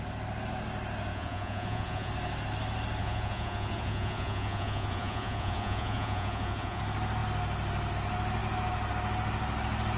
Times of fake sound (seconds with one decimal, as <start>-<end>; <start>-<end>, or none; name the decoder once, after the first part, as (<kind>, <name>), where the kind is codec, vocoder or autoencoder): 1.1-2.1 (vocoder, Vocos); 3.0-6.8